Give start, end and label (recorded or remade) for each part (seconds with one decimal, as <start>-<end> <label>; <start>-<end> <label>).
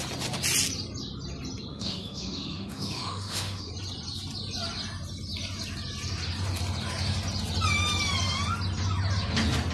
0.0-1.7 recorded; 1.7-3.7 remade; 3.7-9.7 recorded